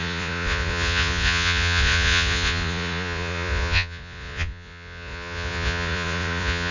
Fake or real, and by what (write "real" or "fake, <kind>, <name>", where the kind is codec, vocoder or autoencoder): fake, vocoder, Vocos